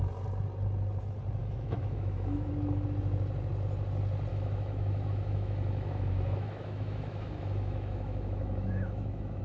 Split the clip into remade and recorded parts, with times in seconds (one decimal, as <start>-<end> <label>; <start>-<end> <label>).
0.0-1.4 recorded; 1.4-2.5 remade; 2.5-4.3 recorded; 4.3-9.4 remade